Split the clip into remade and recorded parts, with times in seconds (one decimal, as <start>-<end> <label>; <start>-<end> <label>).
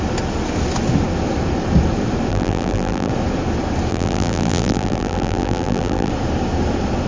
0.0-2.3 recorded; 2.3-3.1 remade; 3.1-3.9 recorded; 3.9-6.1 remade; 6.1-7.1 recorded